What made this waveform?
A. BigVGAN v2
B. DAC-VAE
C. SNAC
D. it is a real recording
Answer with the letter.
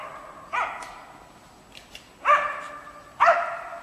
D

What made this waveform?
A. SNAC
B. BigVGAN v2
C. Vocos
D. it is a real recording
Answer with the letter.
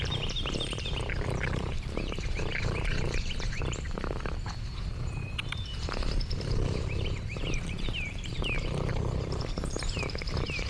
B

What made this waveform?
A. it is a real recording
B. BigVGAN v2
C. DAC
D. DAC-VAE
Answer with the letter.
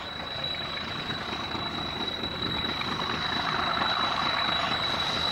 A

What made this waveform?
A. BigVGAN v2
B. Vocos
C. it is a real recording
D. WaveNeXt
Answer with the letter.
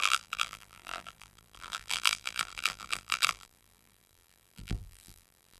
A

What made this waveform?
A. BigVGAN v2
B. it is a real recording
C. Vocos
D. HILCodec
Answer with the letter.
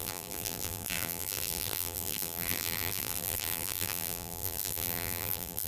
A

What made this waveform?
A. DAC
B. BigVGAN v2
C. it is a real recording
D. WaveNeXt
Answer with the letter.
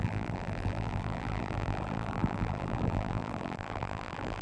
B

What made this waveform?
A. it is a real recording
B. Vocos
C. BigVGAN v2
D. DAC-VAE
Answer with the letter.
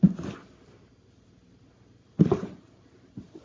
C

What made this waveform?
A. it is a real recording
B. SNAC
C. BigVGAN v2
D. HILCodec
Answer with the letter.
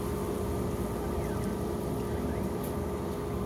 A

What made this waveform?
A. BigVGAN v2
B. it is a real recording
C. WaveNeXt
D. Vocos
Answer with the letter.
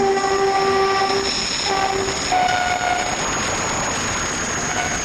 B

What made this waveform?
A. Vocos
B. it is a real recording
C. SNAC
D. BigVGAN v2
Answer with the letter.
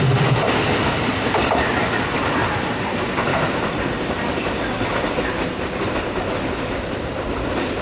D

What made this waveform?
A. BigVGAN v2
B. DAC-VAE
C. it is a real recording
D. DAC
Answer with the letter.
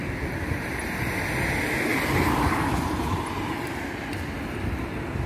C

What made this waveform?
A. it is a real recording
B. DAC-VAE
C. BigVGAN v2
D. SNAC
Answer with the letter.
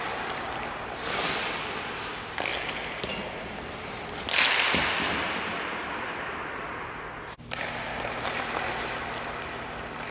A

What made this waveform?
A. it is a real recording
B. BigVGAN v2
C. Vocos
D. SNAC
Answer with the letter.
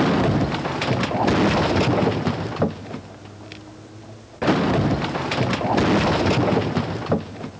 A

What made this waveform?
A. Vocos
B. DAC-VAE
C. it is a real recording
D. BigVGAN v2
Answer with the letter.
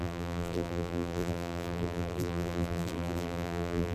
D